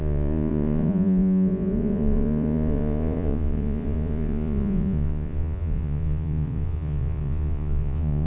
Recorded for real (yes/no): no